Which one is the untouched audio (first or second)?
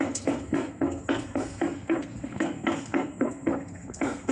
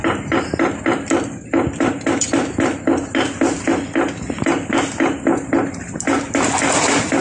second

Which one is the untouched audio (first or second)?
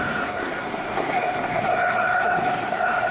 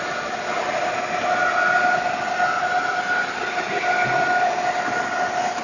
second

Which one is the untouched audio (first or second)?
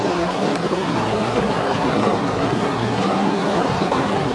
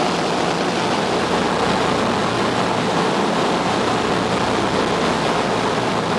second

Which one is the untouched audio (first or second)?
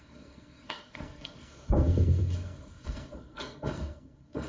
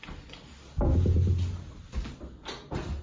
second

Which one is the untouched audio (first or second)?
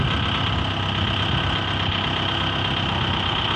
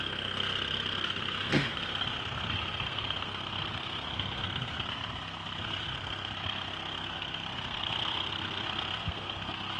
first